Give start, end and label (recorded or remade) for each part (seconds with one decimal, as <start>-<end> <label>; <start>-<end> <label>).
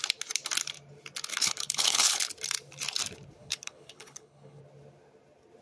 0.0-1.3 recorded; 1.3-2.3 remade; 2.3-3.4 recorded; 3.4-4.6 remade; 4.6-5.6 recorded